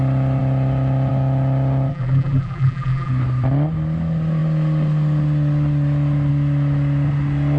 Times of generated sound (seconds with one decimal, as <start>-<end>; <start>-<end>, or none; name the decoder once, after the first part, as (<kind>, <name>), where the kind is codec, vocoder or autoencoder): 1.9-3.1 (vocoder, BigVGAN v2)